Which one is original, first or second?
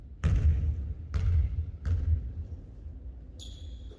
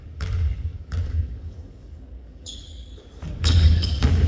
first